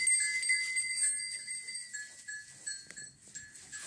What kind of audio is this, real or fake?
real